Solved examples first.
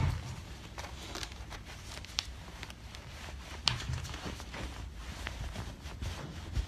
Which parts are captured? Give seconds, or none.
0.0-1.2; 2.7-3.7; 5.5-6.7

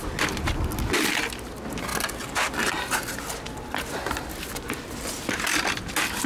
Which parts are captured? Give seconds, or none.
0.0-6.3